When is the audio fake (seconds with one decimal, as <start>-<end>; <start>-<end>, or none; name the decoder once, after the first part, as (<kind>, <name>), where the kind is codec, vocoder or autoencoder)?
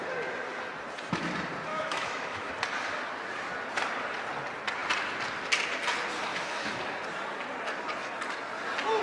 1.7-2.5 (autoencoder, DAC-VAE); 6.3-6.8